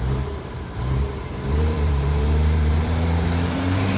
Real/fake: fake